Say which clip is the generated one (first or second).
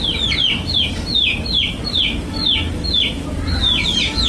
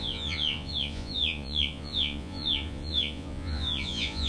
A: second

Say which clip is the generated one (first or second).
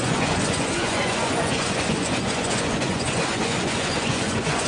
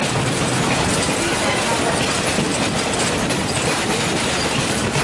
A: first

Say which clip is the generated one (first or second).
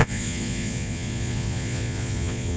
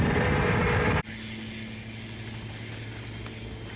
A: first